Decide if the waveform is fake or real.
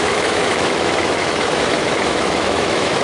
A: fake